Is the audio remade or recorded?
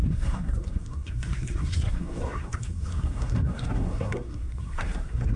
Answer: remade